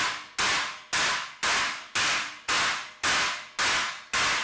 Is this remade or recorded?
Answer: recorded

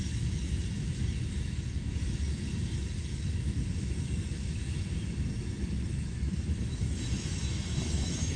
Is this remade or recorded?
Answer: remade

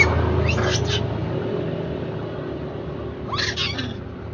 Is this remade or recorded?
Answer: recorded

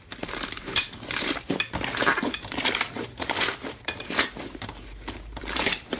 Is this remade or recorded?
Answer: remade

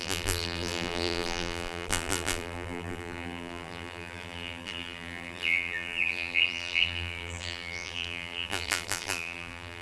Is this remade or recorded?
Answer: remade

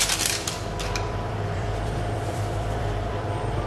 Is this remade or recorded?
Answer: remade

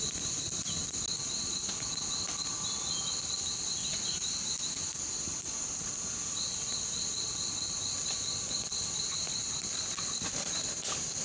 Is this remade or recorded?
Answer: recorded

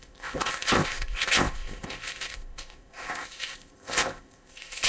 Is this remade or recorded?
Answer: remade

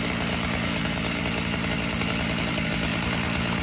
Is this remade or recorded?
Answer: recorded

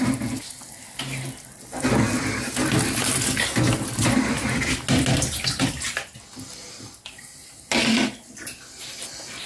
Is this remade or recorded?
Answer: recorded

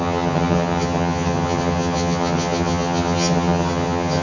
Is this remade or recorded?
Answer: remade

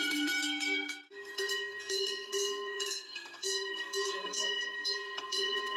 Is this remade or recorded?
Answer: remade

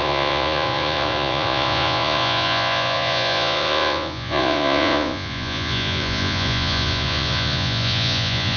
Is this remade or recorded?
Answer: remade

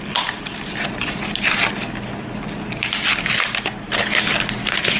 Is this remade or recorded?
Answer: recorded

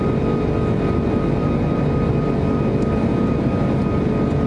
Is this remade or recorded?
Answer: recorded